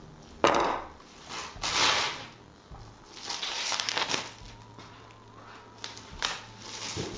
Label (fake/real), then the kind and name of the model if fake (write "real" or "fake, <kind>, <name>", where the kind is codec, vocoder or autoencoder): real